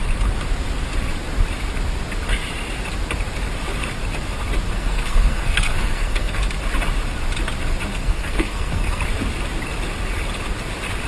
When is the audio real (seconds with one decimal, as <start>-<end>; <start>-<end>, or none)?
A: 0.0-4.7; 6.4-7.9; 9.0-11.1